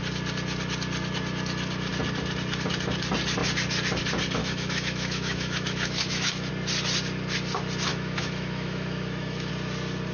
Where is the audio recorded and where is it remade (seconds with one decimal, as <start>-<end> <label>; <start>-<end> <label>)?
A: 0.0-4.4 recorded; 4.4-6.5 remade; 6.5-7.9 recorded; 7.9-9.5 remade; 9.5-10.1 recorded